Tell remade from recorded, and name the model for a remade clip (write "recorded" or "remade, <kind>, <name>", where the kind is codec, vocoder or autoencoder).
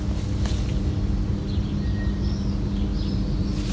recorded